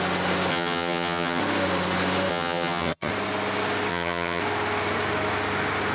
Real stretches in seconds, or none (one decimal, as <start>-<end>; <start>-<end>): 0.0-0.5; 1.4-2.3; 3.1-3.9; 4.4-5.9